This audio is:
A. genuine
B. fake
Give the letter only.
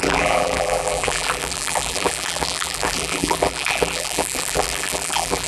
B